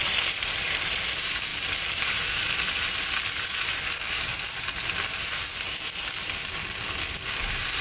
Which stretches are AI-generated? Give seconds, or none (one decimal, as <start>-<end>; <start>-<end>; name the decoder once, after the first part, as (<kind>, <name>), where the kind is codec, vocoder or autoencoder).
0.0-7.8 (vocoder, BigVGAN v2)